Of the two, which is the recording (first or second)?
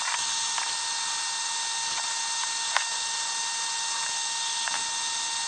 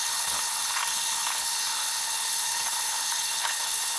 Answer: first